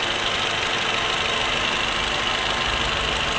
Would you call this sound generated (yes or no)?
no